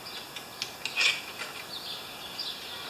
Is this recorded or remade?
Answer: recorded